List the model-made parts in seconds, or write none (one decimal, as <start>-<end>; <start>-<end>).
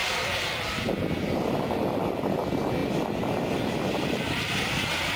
2.8-3.4